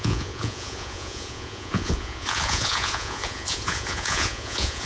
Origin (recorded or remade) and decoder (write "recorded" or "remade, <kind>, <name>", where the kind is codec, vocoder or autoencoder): remade, vocoder, Vocos